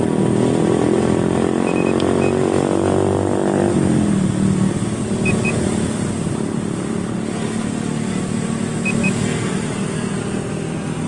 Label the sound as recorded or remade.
recorded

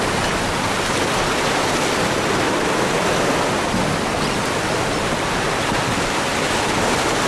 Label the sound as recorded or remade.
recorded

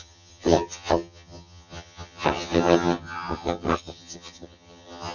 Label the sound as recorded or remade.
remade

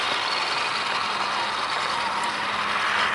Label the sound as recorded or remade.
recorded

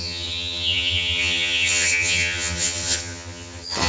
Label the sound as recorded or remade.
remade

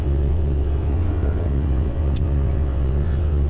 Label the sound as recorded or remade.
remade